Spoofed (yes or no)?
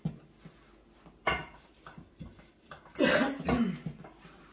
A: no